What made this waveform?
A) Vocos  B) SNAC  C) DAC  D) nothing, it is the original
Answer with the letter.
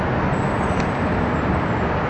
D